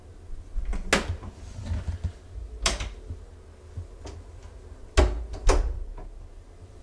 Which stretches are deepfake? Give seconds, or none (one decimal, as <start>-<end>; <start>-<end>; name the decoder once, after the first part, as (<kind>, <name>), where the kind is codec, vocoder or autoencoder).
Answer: none